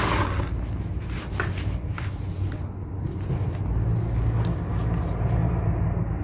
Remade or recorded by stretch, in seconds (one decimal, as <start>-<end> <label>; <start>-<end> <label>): 0.0-5.4 recorded; 5.4-6.2 remade